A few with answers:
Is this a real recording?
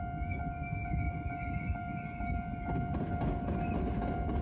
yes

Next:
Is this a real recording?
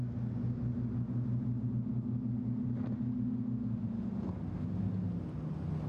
yes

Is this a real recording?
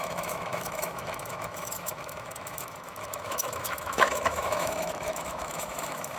no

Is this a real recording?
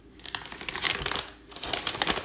yes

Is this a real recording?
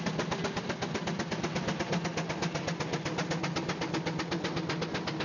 yes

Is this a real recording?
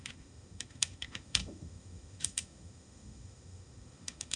no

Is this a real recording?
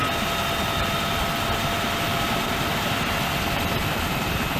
yes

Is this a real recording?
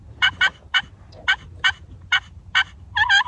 yes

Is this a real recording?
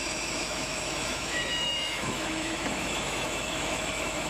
no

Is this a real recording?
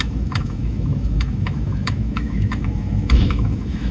no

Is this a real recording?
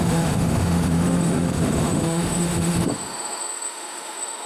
no